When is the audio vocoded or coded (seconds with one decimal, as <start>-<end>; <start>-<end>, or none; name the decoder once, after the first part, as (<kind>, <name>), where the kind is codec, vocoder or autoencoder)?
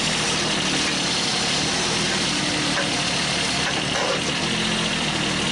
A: 1.3-4.4 (vocoder, BigVGAN v2)